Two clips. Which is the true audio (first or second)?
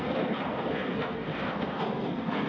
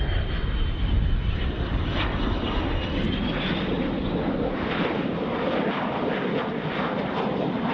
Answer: second